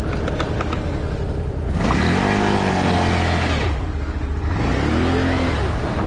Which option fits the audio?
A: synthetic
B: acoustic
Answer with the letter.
B